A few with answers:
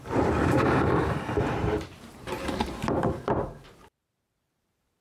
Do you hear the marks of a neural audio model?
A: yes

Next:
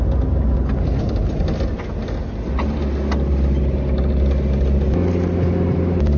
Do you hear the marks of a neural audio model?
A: no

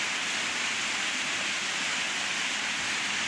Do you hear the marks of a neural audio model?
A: no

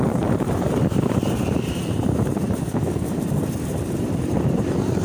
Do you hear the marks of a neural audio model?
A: yes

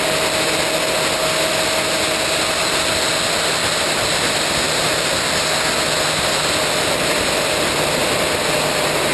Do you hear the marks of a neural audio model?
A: no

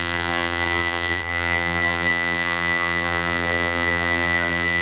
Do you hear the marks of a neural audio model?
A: yes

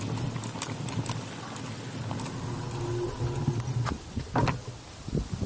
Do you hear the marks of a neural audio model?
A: no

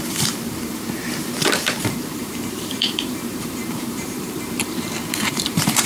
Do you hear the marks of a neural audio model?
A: yes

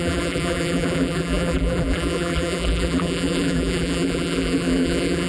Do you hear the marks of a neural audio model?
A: yes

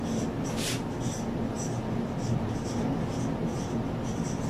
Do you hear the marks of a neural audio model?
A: no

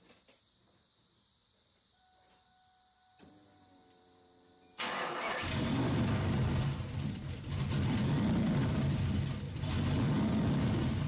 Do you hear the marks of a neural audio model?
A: yes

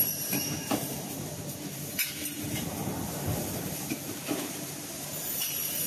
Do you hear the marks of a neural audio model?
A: yes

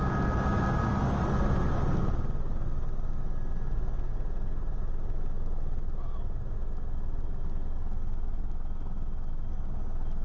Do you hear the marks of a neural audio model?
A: no